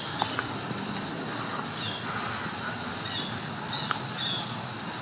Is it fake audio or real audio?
real